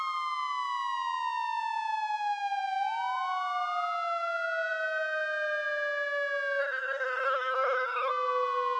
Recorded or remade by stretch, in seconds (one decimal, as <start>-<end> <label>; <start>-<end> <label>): 0.0-6.6 recorded; 6.6-8.1 remade; 8.1-8.8 recorded